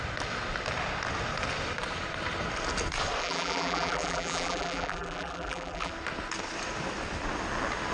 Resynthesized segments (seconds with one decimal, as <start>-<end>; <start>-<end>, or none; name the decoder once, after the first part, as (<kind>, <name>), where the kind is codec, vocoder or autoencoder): 3.2-5.9 (vocoder, BigVGAN v2)

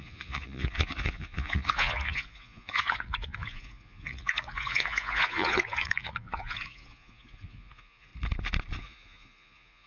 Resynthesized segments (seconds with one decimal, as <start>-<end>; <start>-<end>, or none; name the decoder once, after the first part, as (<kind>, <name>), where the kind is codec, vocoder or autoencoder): 0.0-8.1 (vocoder, Vocos); 8.8-9.9

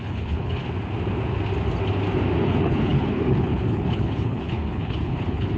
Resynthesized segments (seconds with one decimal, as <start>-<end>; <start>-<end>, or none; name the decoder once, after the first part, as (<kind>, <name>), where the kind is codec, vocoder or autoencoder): 0.0-0.6 (codec, HILCodec); 2.4-5.6

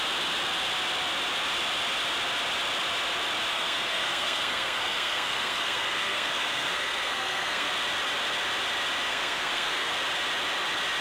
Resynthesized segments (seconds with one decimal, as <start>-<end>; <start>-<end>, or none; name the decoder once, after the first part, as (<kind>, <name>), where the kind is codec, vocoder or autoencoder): 3.5-7.7 (codec, SNAC); 9.1-9.9

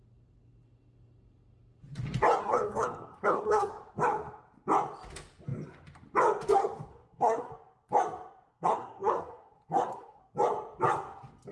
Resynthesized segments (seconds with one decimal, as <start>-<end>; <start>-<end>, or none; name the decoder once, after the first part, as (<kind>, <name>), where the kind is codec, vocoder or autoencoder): 2.4-3.7 (codec, SNAC); 6.9-7.5; 8.5-10.2

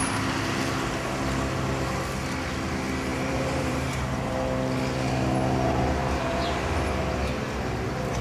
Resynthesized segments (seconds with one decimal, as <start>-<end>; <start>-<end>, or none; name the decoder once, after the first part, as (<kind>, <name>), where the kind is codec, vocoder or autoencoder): 3.1-4.3 (vocoder, BigVGAN v2); 6.0-6.9

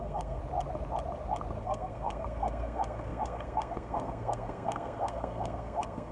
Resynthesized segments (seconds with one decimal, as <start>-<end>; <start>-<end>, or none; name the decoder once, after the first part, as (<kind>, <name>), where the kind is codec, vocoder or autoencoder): 0.0-0.4 (codec, SNAC); 1.6-6.1

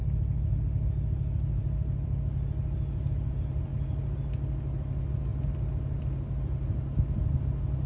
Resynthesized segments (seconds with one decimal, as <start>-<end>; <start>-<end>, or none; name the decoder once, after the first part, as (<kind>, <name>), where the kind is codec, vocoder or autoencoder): none